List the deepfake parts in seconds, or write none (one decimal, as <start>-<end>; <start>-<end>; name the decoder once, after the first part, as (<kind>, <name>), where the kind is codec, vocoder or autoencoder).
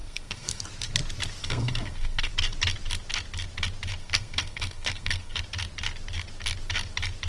0.0-0.6 (codec, SNAC); 1.4-2.3; 4.0-5.4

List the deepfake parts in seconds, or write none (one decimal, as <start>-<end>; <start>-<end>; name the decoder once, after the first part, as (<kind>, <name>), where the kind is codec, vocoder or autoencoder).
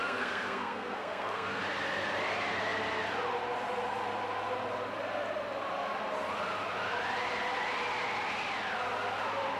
0.0-1.6 (codec, SNAC)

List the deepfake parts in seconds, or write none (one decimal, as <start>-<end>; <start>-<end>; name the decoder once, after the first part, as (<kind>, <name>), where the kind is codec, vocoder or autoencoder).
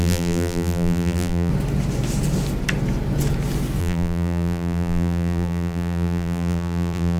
0.0-1.5 (vocoder, BigVGAN v2); 3.8-7.2